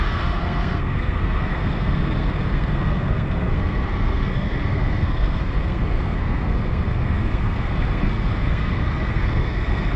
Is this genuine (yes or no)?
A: no